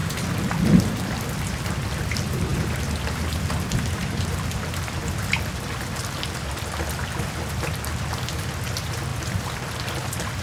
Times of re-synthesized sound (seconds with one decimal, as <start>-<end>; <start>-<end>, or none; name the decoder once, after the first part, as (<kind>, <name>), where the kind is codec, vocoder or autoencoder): 4.0-5.7 (vocoder, BigVGAN v2)